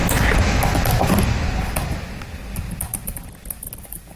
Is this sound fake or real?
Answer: real